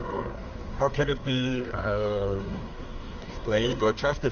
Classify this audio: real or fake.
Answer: fake